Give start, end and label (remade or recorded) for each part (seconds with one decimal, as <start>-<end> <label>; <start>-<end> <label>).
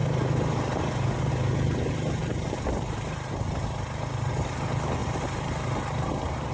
0.0-2.2 recorded; 2.2-3.5 remade; 3.5-5.0 recorded; 5.0-6.5 remade